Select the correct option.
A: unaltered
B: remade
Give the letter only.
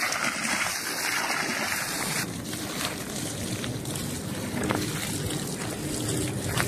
A